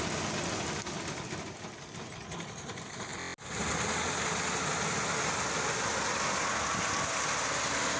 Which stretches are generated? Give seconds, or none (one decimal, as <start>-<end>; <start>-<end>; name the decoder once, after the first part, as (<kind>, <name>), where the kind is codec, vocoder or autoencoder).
none